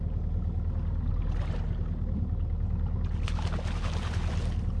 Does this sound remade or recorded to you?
recorded